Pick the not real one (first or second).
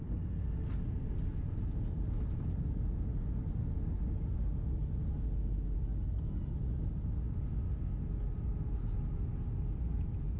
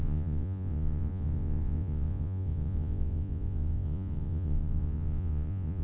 second